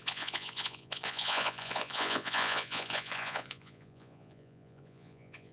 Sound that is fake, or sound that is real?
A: fake